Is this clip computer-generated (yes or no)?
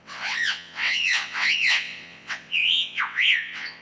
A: yes